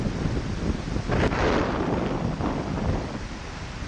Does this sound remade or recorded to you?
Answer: recorded